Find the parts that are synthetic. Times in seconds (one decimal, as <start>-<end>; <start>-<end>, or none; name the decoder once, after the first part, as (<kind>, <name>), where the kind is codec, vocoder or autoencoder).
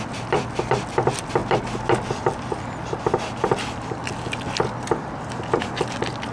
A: none